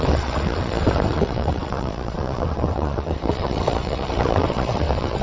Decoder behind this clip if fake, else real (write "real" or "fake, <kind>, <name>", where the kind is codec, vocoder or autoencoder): fake, vocoder, WaveNeXt